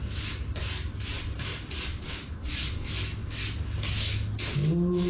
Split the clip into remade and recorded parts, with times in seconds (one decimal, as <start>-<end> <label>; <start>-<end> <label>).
0.0-5.1 recorded

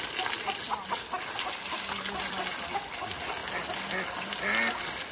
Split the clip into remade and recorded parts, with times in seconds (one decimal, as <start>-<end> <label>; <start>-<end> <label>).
0.0-5.1 recorded

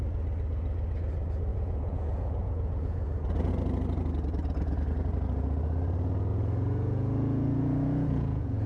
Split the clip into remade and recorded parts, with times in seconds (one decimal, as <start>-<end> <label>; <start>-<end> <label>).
0.0-1.5 recorded; 1.5-3.5 remade; 3.5-6.3 recorded; 6.3-8.7 remade